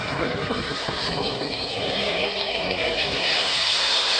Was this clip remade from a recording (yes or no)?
yes